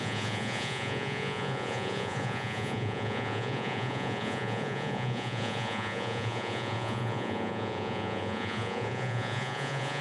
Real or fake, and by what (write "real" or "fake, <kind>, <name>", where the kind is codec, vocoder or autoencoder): fake, vocoder, Vocos